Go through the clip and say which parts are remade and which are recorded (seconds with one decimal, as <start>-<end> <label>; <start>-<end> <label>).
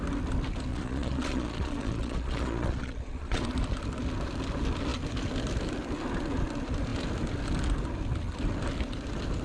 0.0-0.7 recorded; 0.7-3.4 remade; 3.4-9.4 recorded